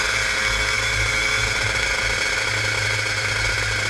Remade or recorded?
recorded